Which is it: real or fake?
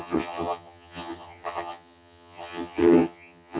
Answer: fake